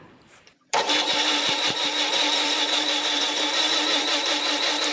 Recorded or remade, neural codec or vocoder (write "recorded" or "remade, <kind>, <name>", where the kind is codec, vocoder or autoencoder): remade, vocoder, BigVGAN v2